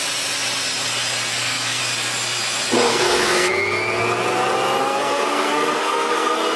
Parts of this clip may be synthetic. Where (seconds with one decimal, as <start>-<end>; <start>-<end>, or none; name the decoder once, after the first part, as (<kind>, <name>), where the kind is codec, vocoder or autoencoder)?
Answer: 1.3-1.8 (codec, SNAC); 2.9-3.5; 4.8-6.6